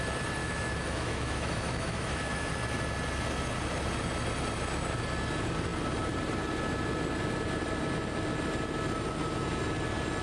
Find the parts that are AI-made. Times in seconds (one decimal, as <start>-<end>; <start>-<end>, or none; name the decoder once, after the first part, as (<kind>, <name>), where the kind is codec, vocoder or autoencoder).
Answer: 0.4-2.5 (autoencoder, DAC-VAE)